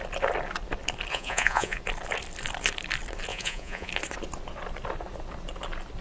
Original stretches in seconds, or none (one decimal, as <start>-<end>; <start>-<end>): 0.0-1.1; 1.8-3.3; 3.9-6.0